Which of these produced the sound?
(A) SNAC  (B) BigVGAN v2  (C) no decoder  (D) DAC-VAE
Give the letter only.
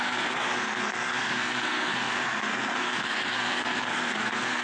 A